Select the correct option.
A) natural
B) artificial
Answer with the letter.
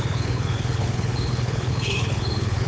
B